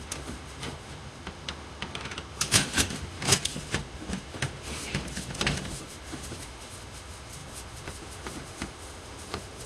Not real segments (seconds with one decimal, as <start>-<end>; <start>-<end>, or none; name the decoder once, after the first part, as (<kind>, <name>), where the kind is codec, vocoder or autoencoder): 0.0-9.7 (autoencoder, DAC-VAE)